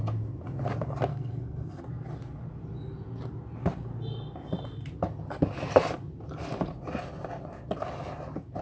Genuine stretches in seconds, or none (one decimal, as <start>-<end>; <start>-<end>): 0.0-1.1; 1.8-8.6